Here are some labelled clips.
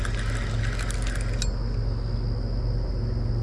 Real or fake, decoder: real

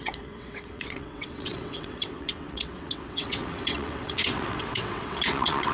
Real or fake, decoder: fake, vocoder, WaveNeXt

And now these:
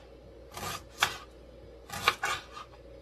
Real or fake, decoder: real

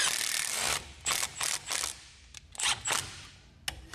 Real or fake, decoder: real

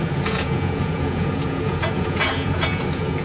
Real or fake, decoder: fake, vocoder, Vocos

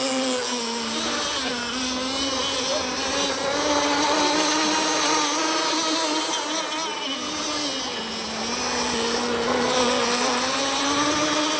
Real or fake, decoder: real